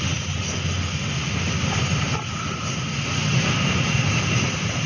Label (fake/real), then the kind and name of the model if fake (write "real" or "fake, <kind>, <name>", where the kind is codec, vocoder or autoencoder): real